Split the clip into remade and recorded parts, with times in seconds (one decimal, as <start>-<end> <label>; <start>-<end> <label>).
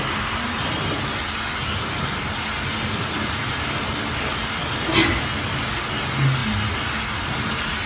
0.0-7.9 recorded